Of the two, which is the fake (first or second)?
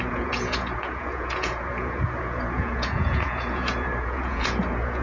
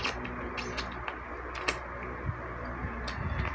first